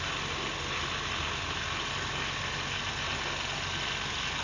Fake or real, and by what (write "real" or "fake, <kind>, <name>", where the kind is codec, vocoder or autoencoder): real